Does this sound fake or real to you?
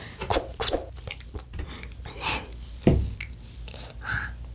real